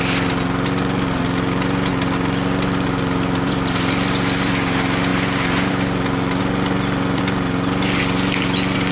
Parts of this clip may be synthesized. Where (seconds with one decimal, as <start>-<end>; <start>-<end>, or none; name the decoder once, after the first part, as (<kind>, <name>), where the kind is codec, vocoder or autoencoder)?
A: none